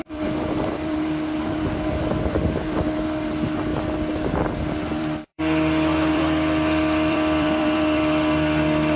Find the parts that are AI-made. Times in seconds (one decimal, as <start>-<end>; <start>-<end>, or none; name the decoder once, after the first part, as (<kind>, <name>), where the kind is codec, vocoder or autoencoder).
0.0-3.7 (vocoder, BigVGAN v2); 4.9-5.4; 6.1-9.0